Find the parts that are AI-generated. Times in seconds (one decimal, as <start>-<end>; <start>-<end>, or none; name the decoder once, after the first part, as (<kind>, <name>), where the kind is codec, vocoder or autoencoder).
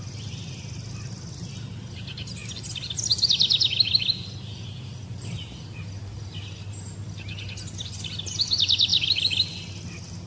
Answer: none